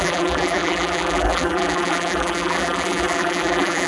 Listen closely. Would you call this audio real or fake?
fake